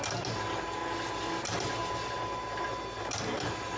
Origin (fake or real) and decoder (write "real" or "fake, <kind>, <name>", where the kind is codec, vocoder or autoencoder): real